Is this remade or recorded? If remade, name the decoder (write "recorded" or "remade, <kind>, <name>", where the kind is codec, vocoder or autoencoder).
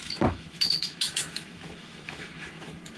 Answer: remade, autoencoder, DAC-VAE